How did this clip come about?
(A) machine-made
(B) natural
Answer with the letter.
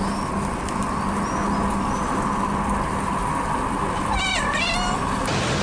B